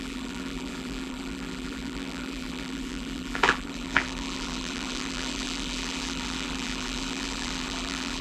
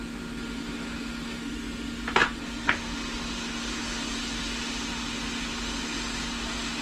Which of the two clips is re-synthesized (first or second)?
first